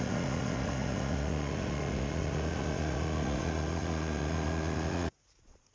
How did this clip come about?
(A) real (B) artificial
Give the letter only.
B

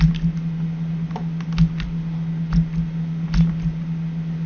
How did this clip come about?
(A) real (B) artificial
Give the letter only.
A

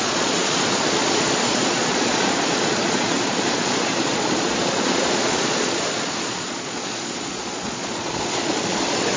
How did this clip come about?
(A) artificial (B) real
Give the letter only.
A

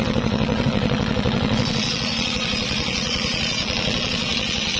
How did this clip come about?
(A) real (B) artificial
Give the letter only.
B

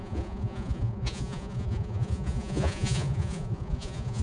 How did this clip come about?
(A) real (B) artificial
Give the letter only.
B